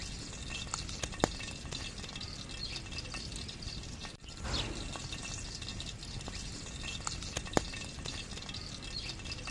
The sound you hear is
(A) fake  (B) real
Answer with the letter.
B